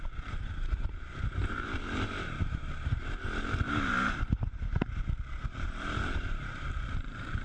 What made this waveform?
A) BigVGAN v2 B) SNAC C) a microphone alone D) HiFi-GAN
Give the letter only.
A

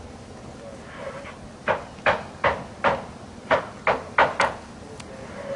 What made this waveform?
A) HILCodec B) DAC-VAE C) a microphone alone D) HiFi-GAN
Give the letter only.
C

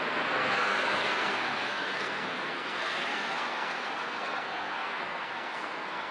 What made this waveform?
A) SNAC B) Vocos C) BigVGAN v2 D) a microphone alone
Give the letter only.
A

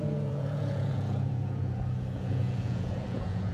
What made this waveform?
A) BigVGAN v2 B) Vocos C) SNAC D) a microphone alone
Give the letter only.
B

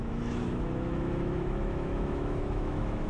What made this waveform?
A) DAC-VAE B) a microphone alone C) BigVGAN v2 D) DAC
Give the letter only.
A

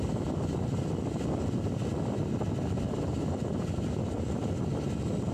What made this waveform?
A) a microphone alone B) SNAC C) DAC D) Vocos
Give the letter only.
A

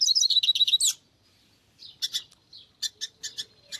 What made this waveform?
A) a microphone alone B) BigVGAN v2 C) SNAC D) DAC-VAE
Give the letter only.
A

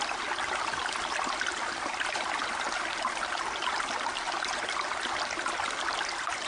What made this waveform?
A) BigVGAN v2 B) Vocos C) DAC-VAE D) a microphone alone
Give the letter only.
D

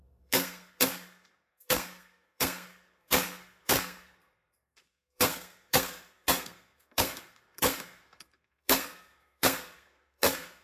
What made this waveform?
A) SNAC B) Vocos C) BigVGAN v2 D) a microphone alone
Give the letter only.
A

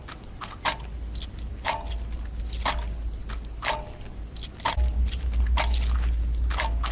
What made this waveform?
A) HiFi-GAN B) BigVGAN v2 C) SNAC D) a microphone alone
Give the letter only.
D